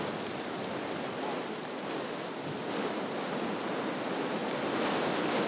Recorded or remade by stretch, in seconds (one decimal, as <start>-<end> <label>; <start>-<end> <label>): 0.0-5.5 recorded